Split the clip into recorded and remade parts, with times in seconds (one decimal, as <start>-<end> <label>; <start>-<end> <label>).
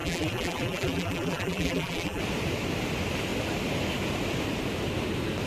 0.0-2.2 remade; 2.2-5.5 recorded